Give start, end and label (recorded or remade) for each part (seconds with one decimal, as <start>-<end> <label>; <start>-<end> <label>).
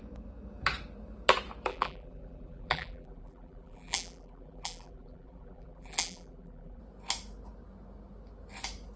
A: 0.0-1.7 recorded; 1.7-6.8 remade; 6.8-9.0 recorded